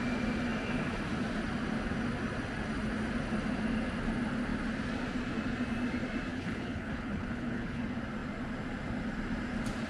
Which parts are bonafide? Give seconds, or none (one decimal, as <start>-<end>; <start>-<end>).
0.0-6.3; 7.8-9.9